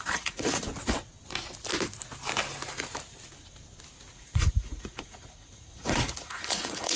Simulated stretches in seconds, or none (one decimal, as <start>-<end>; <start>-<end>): 0.0-0.7; 4.1-7.0